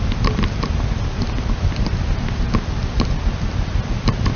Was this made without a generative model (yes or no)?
yes